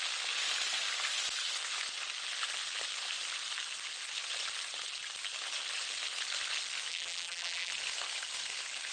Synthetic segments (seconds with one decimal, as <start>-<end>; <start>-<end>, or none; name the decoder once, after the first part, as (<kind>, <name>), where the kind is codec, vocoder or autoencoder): 6.9-7.7 (vocoder, BigVGAN v2)

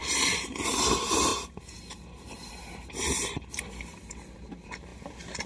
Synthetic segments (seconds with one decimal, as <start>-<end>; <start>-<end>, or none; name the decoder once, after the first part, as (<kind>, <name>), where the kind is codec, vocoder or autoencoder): 0.0-5.5 (vocoder, BigVGAN v2)

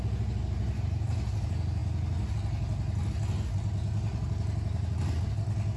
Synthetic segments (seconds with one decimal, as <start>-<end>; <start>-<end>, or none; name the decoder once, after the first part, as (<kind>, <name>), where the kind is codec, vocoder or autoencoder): none

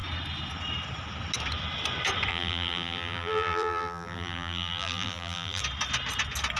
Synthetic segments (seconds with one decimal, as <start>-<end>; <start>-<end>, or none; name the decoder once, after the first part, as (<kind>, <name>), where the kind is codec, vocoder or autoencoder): 2.3-5.6 (vocoder, BigVGAN v2)

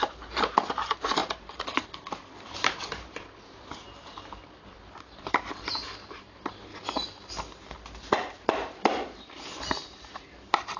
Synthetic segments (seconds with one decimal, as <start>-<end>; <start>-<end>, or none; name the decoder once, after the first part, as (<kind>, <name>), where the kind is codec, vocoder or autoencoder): 0.0-6.7 (vocoder, BigVGAN v2); 8.0-10.8

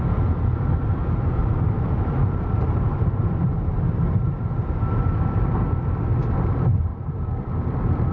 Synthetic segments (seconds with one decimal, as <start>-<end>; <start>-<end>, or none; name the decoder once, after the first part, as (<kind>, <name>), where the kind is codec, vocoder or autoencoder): 1.4-4.8 (vocoder, BigVGAN v2); 6.9-7.5

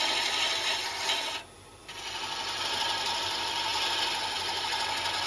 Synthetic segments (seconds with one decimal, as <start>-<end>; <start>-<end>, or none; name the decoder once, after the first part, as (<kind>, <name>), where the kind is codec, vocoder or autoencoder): 1.8-2.8 (vocoder, BigVGAN v2)